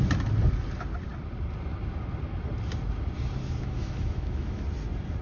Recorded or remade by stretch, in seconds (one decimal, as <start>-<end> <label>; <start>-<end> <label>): 0.0-3.4 recorded; 3.4-4.6 remade; 4.6-5.2 recorded